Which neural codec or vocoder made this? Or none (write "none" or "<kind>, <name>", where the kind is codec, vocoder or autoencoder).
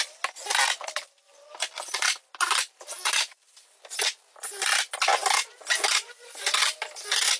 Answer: none